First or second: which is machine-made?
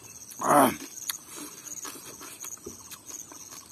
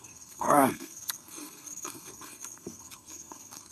second